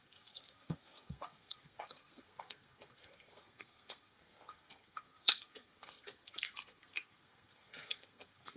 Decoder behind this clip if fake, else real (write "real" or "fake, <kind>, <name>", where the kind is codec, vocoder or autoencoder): fake, codec, SNAC